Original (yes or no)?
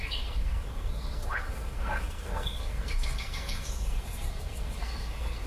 no